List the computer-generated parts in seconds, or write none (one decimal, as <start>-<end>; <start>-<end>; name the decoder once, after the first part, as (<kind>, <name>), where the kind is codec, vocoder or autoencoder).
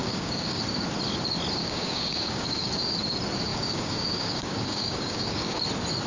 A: 0.0-0.6 (codec, DAC); 1.6-2.7; 3.5-5.6